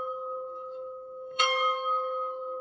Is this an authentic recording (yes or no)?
no